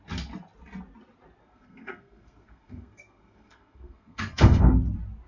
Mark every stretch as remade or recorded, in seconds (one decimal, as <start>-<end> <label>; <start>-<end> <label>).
0.0-1.4 recorded; 1.4-4.6 remade; 4.6-5.3 recorded